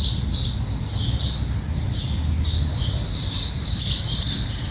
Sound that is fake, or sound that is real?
real